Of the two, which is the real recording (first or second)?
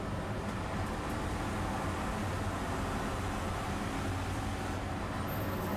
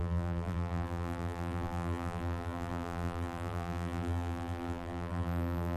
first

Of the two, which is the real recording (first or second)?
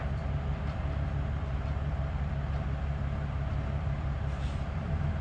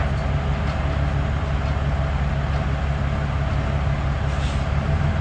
second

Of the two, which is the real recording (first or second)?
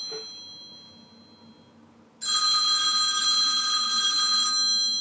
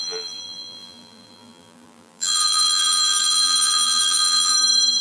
first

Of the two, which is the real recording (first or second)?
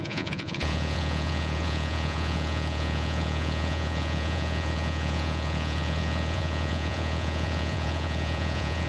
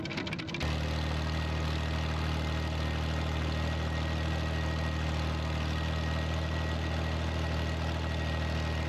second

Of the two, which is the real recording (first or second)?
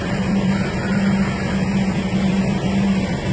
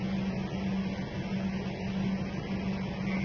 second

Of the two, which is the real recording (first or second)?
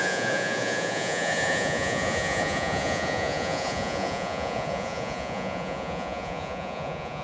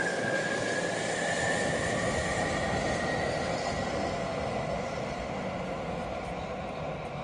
second